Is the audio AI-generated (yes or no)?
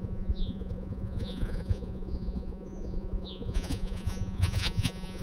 yes